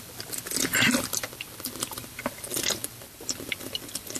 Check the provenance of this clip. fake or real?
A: fake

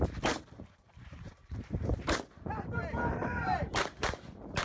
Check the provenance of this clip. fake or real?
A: fake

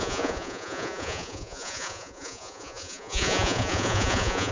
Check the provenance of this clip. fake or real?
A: fake